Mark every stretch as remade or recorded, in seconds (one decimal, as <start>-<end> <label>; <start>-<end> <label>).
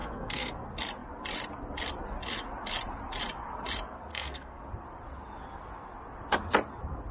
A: 0.0-0.5 remade; 0.5-4.1 recorded; 4.1-4.6 remade; 4.6-7.1 recorded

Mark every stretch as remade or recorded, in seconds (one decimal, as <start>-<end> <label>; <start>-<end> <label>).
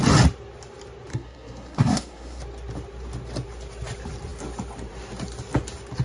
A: 0.0-1.1 recorded; 1.1-2.4 remade; 2.4-6.0 recorded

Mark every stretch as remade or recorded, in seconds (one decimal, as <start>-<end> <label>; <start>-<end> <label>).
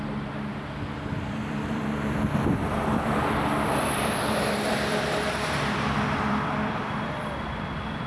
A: 0.0-0.5 remade; 0.5-1.1 recorded; 1.1-8.1 remade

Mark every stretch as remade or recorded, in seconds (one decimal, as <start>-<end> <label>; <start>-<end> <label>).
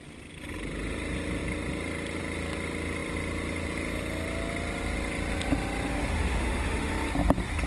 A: 0.0-5.9 recorded; 5.9-6.9 remade; 6.9-7.7 recorded